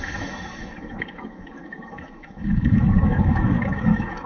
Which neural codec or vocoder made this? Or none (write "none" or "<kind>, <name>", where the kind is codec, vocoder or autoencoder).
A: autoencoder, DAC-VAE